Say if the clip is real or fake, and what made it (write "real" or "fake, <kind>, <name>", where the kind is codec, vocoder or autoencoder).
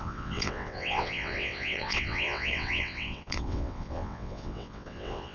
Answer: fake, vocoder, WaveNeXt